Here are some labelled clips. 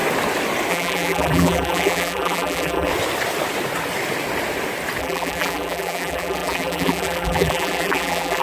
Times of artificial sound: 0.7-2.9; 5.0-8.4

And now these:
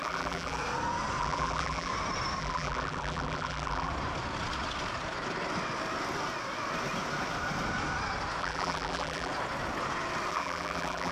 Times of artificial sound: 0.0-0.6; 1.2-1.9; 2.4-3.9; 8.4-9.3; 10.3-11.1

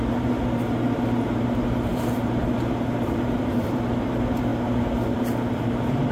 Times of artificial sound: 0.0-6.1

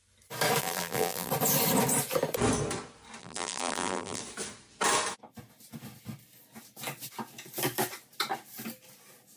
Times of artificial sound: 0.6-1.3; 3.2-4.2